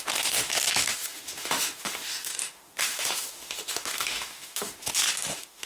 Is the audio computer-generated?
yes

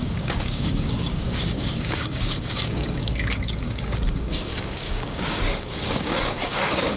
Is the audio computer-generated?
yes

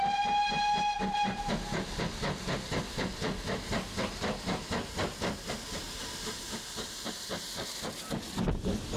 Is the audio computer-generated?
no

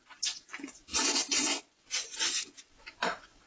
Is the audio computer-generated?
yes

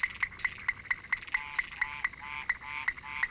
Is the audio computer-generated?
no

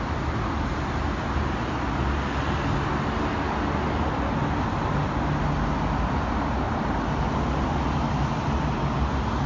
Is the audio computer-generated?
no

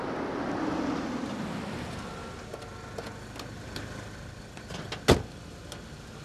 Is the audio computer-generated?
no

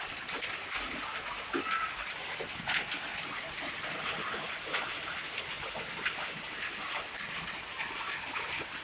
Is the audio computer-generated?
no